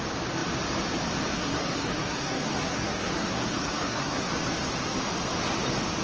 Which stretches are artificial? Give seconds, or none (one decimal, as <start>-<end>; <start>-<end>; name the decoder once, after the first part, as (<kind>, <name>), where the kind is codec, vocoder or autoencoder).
1.3-4.3 (codec, SNAC)

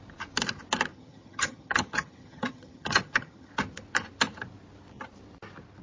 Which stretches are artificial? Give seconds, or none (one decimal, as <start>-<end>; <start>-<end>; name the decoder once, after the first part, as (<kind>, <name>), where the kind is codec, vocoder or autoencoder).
0.9-3.5 (vocoder, HiFi-GAN)

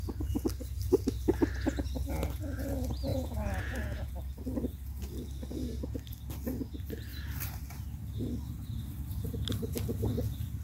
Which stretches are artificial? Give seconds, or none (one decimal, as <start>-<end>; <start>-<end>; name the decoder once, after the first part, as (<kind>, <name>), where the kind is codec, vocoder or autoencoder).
3.1-4.1 (vocoder, Vocos)